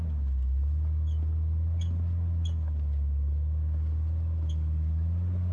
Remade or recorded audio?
recorded